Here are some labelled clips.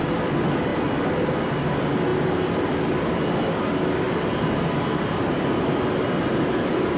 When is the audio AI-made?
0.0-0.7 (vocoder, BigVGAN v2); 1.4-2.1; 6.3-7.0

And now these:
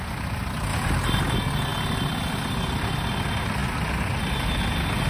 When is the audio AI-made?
0.7-1.2 (vocoder, BigVGAN v2)

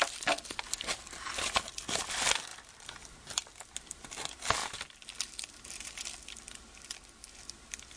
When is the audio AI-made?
none

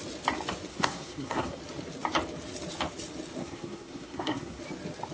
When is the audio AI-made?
0.7-1.6 (codec, SNAC); 3.4-4.6

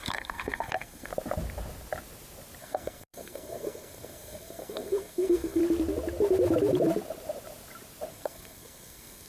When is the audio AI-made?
0.0-1.1 (codec, SNAC); 2.6-5.6; 8.1-9.3

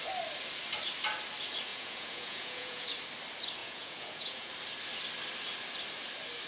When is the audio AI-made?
1.7-2.9 (vocoder, Vocos); 3.6-4.5

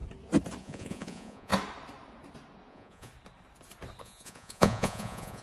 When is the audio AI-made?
0.6-1.5 (vocoder, Vocos); 2.7-3.1; 4.0-5.4

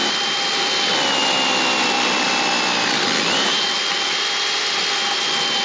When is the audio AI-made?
none